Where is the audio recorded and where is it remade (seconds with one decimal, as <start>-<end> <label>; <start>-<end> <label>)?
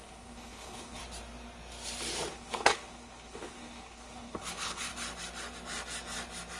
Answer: 0.0-1.0 remade; 1.0-2.3 recorded; 2.3-4.9 remade; 4.9-6.6 recorded